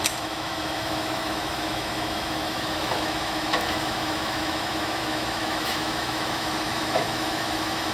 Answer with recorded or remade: remade